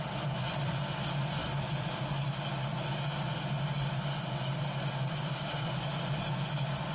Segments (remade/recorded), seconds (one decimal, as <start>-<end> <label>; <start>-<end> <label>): 0.0-0.4 recorded; 0.4-1.0 remade; 1.0-1.4 recorded; 1.4-2.0 remade; 2.0-6.9 recorded